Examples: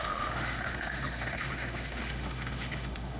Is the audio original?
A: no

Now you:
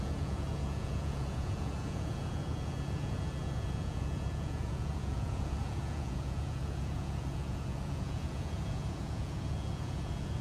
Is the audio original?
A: no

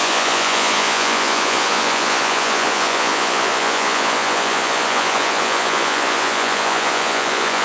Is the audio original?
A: no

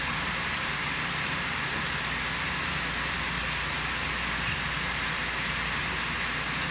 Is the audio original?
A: yes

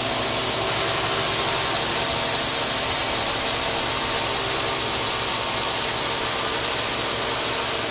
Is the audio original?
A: yes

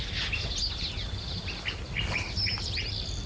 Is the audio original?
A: yes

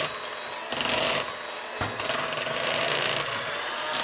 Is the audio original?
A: yes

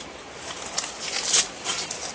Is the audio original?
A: yes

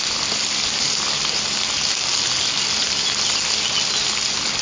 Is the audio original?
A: yes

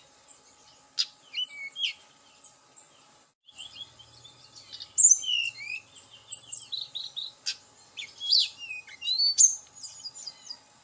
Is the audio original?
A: yes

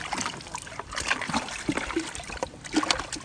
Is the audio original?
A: yes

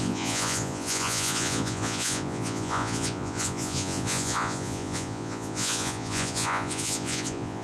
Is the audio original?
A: no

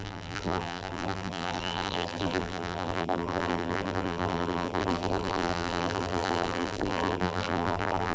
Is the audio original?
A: no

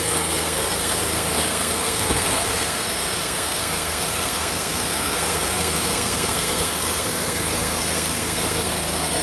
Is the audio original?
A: no